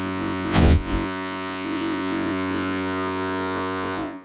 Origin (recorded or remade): remade